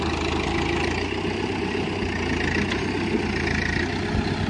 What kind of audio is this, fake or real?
real